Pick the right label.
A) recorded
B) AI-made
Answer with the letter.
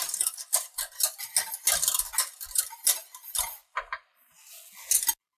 A